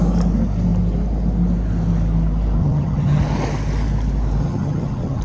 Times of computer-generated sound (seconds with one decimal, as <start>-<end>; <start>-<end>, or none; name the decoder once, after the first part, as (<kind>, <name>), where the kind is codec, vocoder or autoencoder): 2.6-3.2 (vocoder, HiFi-GAN); 4.4-5.2